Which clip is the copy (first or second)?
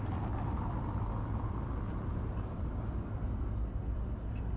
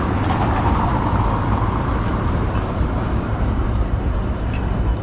second